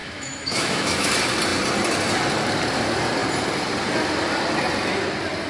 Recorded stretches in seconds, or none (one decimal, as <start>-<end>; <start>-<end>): 1.1-5.5